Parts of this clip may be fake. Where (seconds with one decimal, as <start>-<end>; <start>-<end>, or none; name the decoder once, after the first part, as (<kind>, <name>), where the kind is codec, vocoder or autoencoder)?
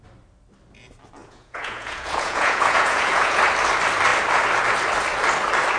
1.2-3.4 (vocoder, Vocos)